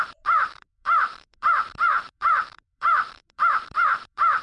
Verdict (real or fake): fake